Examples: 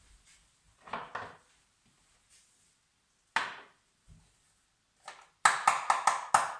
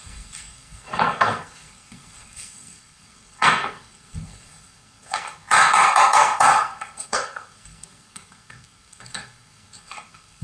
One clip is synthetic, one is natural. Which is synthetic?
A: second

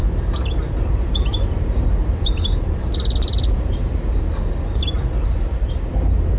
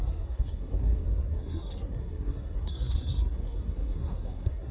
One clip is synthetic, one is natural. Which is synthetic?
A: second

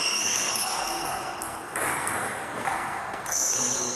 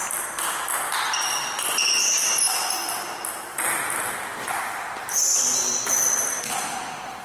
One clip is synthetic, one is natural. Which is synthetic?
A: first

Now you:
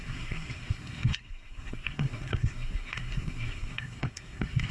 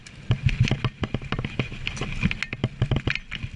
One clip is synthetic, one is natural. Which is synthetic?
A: first